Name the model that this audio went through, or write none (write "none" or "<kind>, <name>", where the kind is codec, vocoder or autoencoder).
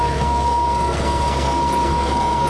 codec, SNAC